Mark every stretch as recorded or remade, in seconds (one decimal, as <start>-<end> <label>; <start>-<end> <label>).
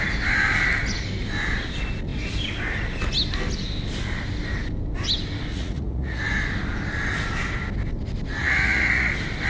0.0-5.5 recorded; 5.5-6.2 remade; 6.2-8.4 recorded; 8.4-9.1 remade; 9.1-9.5 recorded